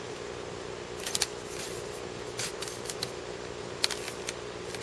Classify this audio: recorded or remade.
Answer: recorded